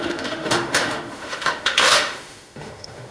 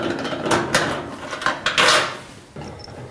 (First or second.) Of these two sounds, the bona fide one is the second